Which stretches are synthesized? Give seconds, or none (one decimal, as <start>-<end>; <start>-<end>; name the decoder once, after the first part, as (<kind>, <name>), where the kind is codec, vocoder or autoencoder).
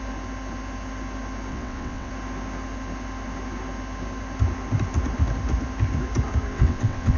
1.5-2.1 (vocoder, WaveNeXt); 6.5-7.2